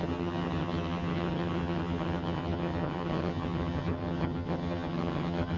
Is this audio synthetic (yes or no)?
yes